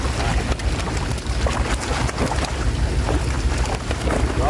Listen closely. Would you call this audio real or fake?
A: real